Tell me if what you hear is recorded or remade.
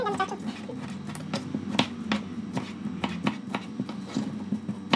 recorded